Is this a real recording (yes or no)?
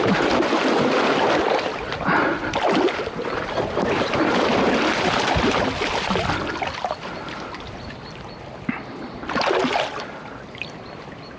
yes